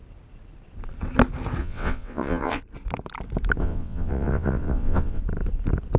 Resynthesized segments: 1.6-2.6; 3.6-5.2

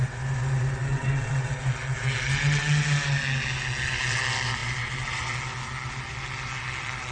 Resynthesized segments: 0.9-1.5